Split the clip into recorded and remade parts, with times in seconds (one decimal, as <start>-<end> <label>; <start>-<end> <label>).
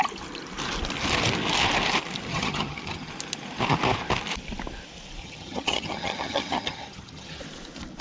0.0-2.3 recorded; 2.3-3.1 remade; 3.1-5.2 recorded; 5.2-7.4 remade; 7.4-8.0 recorded